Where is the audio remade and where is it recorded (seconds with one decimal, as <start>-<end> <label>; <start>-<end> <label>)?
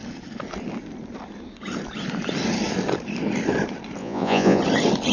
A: 0.0-4.0 recorded; 4.0-4.6 remade; 4.6-5.1 recorded